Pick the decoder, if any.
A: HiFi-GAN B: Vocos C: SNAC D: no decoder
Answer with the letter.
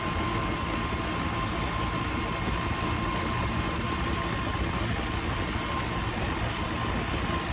D